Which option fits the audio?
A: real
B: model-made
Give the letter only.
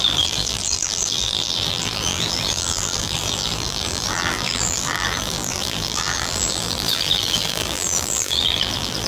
B